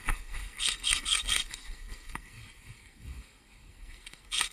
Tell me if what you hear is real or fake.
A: fake